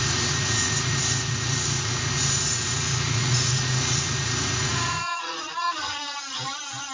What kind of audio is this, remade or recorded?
remade